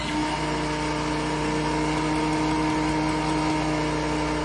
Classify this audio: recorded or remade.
recorded